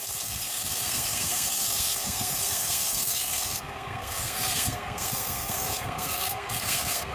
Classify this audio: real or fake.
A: fake